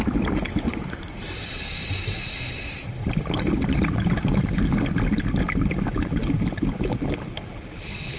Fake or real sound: real